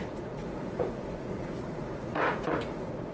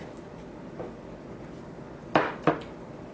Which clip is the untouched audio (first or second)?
second